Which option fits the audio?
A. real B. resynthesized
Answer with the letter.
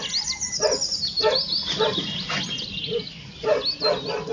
A